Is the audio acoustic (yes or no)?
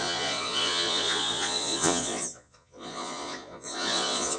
no